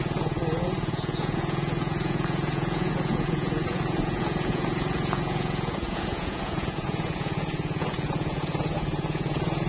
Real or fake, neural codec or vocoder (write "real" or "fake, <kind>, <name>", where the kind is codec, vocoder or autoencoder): fake, vocoder, Vocos